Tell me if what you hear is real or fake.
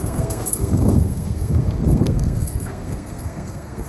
fake